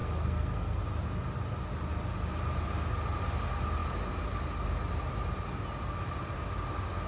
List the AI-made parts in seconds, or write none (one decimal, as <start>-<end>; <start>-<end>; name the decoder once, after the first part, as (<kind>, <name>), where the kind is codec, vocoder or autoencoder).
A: 0.0-0.8 (codec, SNAC)